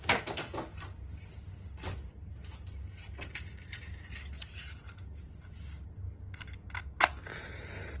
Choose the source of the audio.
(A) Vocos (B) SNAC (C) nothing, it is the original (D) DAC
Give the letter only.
C